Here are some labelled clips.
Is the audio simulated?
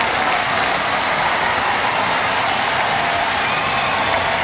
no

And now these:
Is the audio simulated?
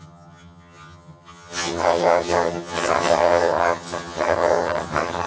yes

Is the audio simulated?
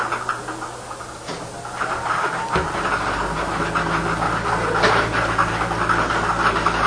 no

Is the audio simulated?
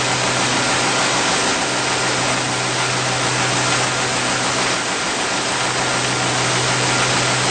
no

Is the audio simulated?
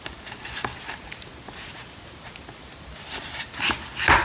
no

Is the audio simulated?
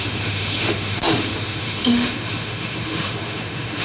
yes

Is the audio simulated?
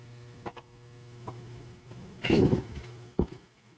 yes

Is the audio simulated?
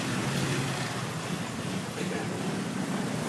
no